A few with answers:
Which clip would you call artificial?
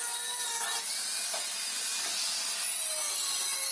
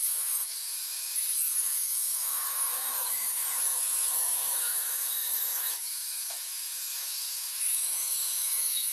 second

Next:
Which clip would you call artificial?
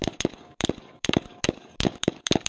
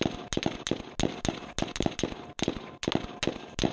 first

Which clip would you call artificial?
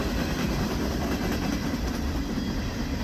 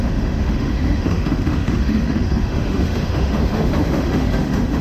second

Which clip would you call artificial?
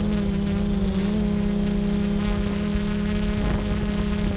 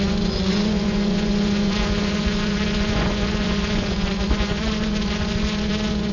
second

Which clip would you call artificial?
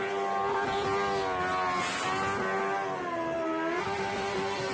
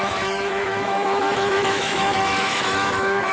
second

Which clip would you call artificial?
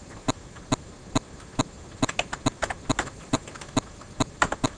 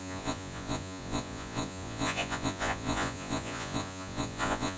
second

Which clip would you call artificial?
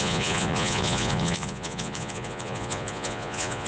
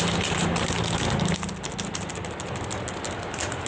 first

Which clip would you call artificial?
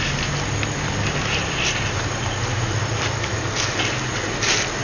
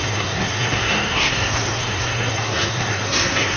second